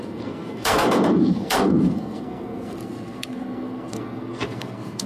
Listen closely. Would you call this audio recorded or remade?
remade